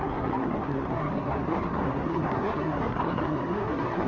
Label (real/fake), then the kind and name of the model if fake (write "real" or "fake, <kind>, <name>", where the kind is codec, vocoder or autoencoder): fake, codec, SNAC